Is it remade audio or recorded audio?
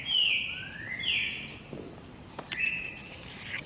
remade